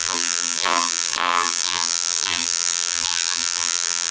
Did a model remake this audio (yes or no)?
yes